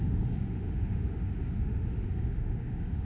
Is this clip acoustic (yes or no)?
no